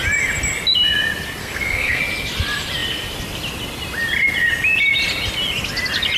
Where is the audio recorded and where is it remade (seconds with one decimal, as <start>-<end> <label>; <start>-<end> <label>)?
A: 0.0-1.4 recorded; 1.4-2.0 remade; 2.0-6.2 recorded